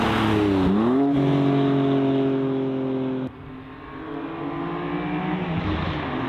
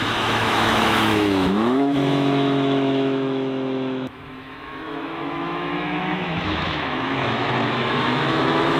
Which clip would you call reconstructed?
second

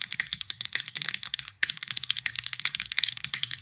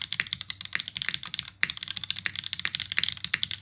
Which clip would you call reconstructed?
first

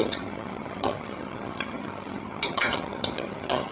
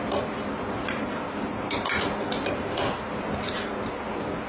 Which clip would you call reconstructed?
first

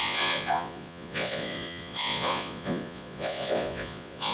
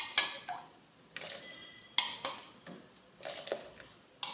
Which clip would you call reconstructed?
first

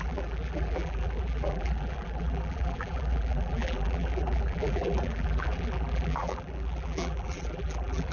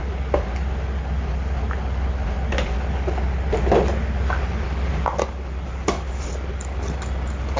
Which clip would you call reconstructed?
first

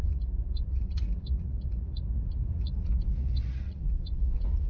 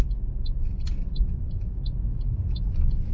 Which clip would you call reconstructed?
first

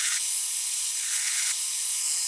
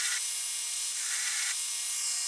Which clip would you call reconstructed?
first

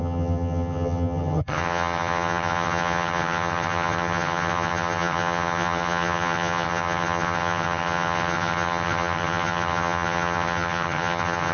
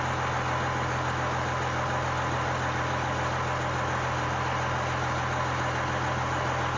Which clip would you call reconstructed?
first